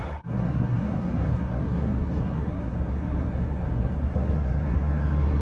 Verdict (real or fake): fake